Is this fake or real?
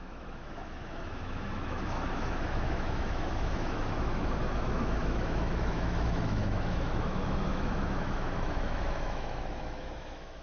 fake